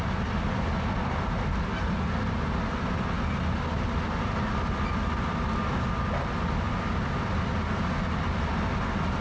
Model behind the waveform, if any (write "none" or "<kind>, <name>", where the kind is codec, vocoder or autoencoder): none